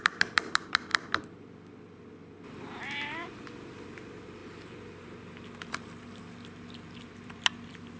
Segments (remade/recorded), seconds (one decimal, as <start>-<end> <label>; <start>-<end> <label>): 0.0-4.4 remade; 4.4-5.7 recorded; 5.7-8.0 remade